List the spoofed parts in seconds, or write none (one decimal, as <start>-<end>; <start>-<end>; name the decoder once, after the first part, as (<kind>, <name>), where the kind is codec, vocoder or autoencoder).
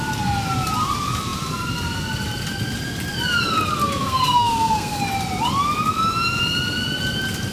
3.8-5.0 (codec, SNAC)